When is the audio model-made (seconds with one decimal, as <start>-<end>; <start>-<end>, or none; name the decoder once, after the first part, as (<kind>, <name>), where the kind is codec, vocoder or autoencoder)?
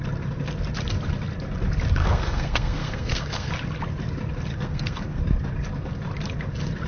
2.0-3.5 (codec, SNAC); 4.5-5.2